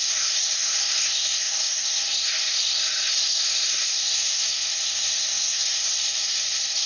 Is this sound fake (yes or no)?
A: yes